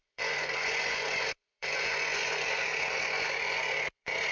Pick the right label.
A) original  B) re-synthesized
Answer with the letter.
B